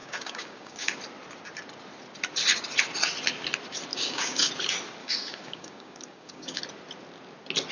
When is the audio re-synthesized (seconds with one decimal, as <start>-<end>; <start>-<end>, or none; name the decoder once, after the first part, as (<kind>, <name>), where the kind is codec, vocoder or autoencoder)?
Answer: 0.0-1.0 (codec, DAC); 3.9-4.5; 5.0-6.6